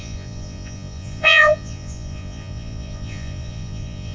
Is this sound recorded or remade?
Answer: remade